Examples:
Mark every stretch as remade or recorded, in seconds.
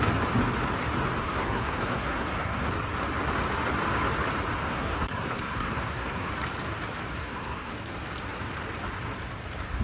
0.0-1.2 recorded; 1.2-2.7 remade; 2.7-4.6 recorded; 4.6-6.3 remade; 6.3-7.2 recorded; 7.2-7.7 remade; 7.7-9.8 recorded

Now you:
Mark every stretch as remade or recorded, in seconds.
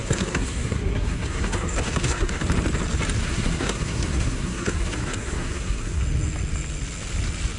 0.0-2.4 remade; 2.4-3.2 recorded; 3.2-6.0 remade; 6.0-7.6 recorded